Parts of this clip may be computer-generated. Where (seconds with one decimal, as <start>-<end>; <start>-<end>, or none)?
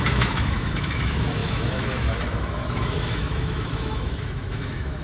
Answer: 0.0-5.0